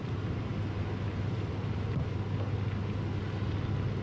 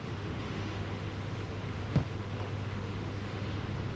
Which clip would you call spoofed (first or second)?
second